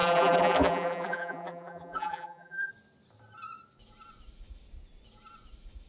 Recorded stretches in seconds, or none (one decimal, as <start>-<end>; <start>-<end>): 2.7-5.9